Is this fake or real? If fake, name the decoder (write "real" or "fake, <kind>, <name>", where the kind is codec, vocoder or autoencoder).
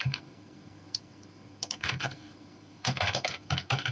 fake, codec, SNAC